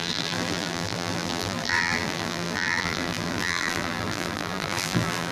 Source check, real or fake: fake